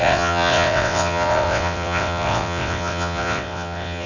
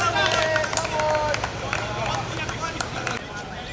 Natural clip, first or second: second